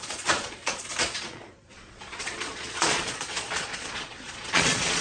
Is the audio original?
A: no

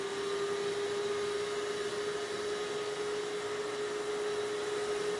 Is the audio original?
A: yes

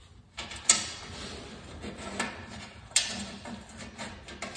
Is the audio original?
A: yes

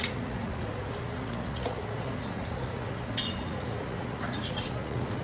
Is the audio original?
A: no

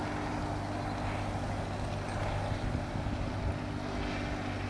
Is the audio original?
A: yes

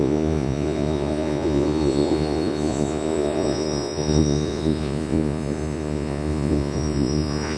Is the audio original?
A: no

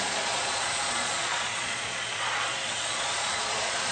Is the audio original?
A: no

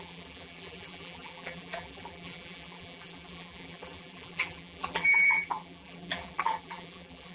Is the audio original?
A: no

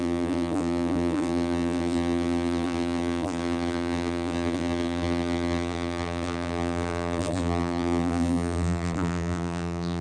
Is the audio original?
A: no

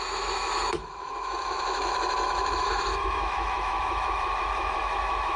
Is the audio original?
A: no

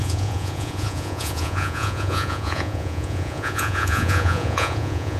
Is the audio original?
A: no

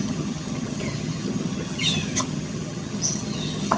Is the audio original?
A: no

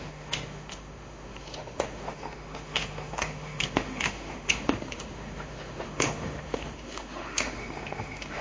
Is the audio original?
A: no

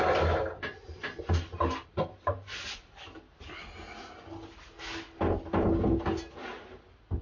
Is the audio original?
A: yes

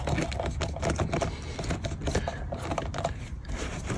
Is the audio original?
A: yes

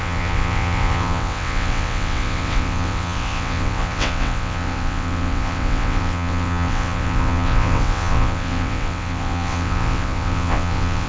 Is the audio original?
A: no